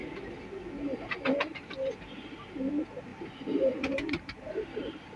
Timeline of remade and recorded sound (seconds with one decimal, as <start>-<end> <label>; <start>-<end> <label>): 0.0-3.1 recorded; 3.1-5.2 remade